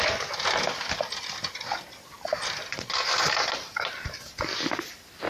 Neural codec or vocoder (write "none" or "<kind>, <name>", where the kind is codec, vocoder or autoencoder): none